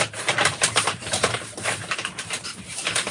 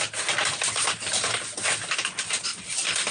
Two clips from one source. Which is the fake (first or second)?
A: first